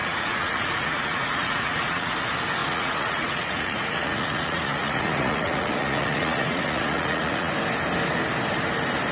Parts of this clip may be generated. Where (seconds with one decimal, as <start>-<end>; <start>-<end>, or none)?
0.0-2.1; 2.6-7.5

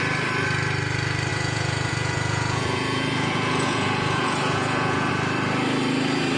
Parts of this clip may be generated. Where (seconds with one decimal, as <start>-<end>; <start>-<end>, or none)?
1.3-5.1

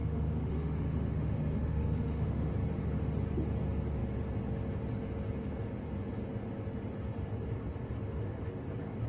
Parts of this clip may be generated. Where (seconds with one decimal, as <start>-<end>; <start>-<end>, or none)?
0.0-2.5

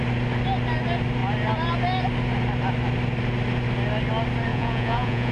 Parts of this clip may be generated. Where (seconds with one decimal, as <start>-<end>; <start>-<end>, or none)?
4.5-5.3

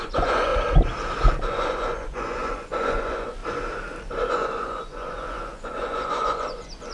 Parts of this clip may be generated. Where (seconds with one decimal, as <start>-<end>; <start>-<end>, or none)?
0.0-0.5; 1.5-3.4; 4.3-6.9

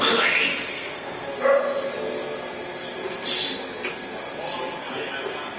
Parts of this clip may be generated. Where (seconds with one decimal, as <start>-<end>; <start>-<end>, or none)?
0.7-1.3

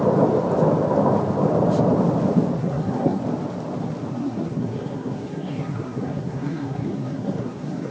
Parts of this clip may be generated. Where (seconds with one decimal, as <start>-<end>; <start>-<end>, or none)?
2.6-3.2; 4.1-7.9